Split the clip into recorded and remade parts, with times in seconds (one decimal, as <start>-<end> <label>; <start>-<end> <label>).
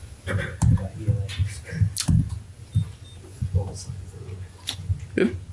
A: 0.0-3.3 recorded; 3.3-5.0 remade; 5.0-5.5 recorded